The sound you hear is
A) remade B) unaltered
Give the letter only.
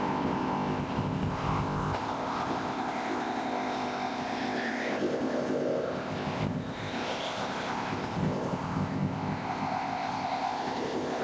A